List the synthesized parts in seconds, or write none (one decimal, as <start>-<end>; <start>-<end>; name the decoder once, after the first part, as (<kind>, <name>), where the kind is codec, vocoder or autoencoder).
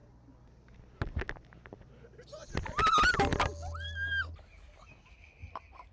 none